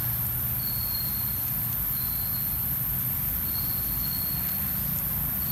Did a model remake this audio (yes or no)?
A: no